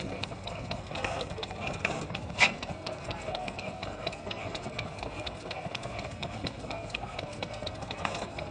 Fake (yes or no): yes